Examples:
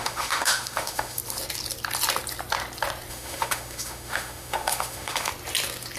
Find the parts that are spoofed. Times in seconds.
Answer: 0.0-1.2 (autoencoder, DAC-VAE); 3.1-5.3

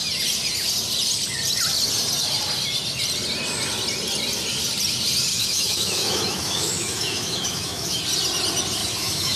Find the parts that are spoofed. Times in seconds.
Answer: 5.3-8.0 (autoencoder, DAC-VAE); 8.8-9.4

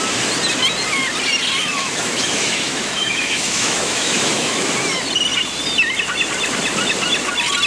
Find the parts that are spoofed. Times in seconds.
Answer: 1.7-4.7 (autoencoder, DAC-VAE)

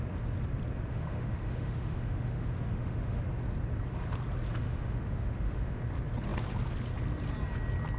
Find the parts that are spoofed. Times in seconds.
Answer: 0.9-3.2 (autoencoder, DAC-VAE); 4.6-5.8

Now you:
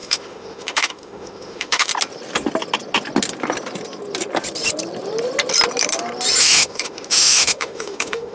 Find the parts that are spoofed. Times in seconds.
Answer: 0.0-1.9 (autoencoder, DAC-VAE); 6.4-8.3

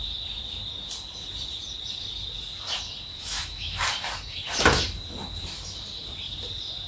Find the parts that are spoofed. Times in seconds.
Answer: 3.1-3.8 (autoencoder, DAC-VAE)

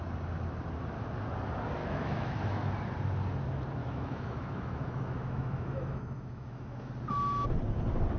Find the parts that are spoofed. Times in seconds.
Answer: 1.8-2.7 (autoencoder, DAC-VAE); 3.8-6.9